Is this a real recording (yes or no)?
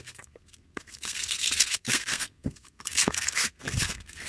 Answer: no